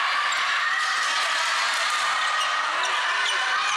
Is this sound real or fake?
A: real